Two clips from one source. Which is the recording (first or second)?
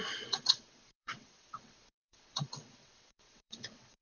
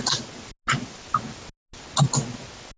second